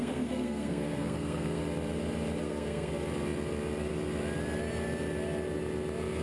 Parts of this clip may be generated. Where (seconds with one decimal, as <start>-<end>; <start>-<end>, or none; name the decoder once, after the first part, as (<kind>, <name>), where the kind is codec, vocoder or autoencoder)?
0.0-1.6 (codec, SNAC); 2.4-2.9